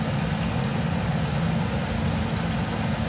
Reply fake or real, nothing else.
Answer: real